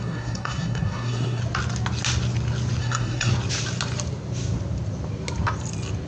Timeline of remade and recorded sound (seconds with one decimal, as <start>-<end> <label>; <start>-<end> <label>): 0.0-1.4 remade; 1.4-2.8 recorded; 2.8-3.3 remade; 3.3-6.1 recorded